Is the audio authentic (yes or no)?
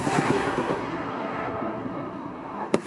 no